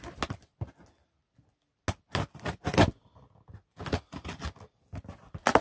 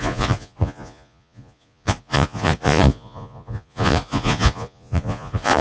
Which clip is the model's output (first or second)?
second